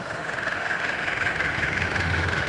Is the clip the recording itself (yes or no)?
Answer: no